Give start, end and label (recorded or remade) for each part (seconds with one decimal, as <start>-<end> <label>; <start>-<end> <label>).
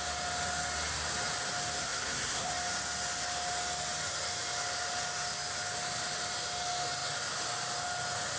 0.0-1.8 recorded; 1.8-2.5 remade; 2.5-8.4 recorded